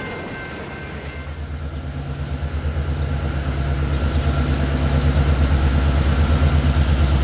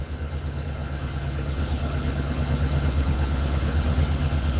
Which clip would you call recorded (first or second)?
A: first